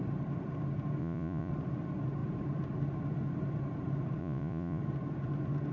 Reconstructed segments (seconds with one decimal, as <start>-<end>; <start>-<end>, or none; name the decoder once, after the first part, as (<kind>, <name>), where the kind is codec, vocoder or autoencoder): 1.0-1.5 (vocoder, Vocos); 4.2-4.8